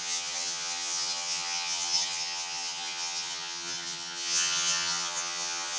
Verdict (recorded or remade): remade